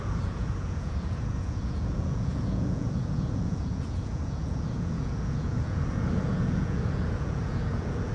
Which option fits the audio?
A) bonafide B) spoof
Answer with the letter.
B